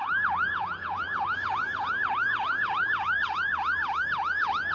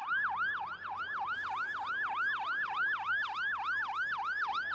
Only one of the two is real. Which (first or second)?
second